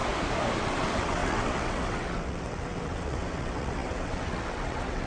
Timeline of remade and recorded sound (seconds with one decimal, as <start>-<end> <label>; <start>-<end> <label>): 0.0-0.6 recorded; 0.6-5.1 remade